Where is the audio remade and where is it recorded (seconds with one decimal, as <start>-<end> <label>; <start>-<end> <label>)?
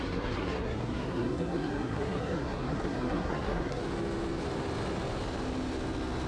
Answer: 0.0-3.8 remade; 3.8-6.3 recorded